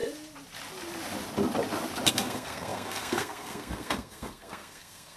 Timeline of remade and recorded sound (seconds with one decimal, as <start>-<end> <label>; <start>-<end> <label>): 0.0-2.1 recorded; 2.1-5.2 remade